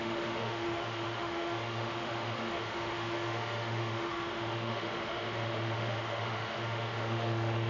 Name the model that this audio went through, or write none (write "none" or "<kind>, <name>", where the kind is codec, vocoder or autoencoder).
autoencoder, DAC-VAE